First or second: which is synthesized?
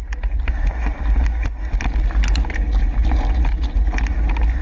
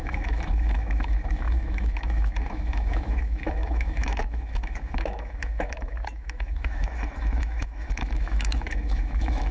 second